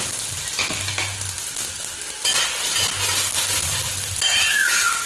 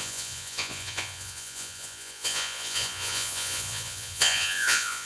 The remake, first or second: second